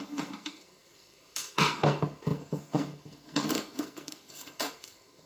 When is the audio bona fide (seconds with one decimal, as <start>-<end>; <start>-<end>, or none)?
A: none